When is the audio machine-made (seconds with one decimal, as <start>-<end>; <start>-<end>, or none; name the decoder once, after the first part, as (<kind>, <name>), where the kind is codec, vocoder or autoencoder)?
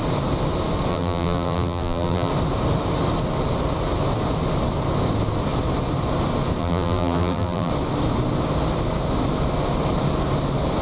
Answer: 0.9-2.3 (vocoder, BigVGAN v2); 6.6-7.7